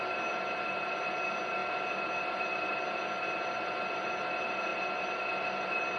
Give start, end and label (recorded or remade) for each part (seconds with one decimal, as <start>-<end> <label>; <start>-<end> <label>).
0.0-6.0 recorded